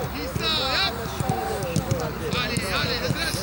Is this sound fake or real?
real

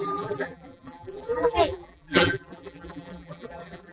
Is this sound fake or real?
fake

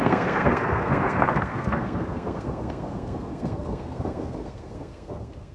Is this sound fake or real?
fake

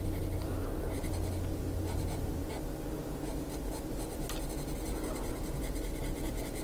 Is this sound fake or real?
real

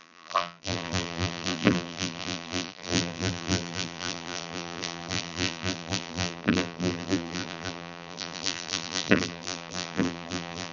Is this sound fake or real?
fake